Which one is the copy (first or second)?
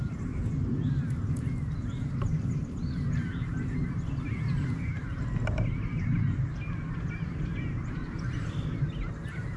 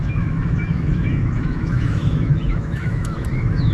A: second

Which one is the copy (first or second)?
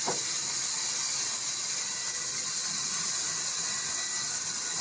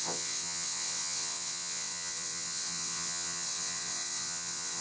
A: second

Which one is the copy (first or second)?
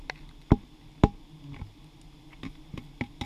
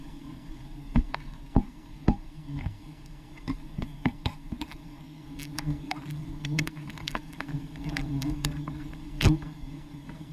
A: second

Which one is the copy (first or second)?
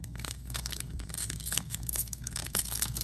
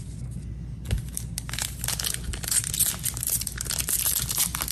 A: first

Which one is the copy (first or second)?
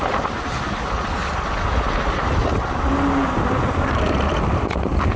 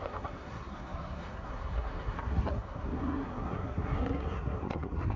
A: second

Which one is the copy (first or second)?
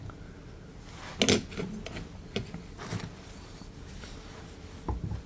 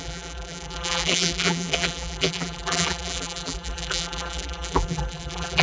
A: second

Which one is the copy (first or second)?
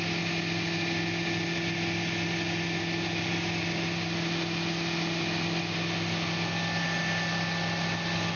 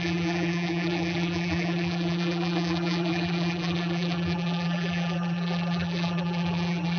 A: second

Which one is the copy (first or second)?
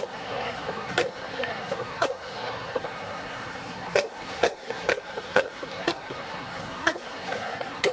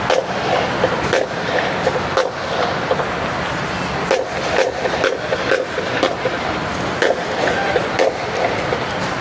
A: first